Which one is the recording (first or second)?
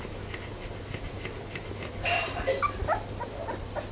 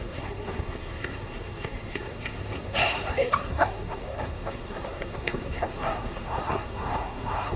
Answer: first